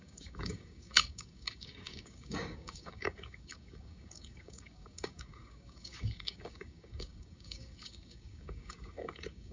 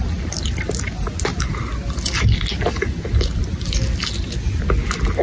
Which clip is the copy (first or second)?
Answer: first